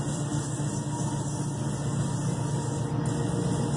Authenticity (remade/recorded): recorded